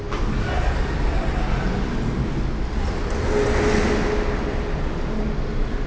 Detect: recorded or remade recorded